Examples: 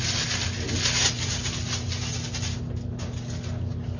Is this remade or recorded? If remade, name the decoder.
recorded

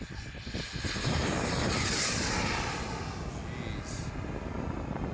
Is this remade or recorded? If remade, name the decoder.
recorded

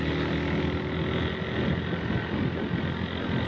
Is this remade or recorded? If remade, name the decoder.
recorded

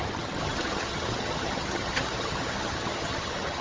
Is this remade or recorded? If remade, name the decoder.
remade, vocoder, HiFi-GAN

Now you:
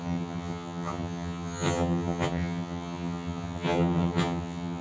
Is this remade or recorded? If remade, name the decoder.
remade, vocoder, HiFi-GAN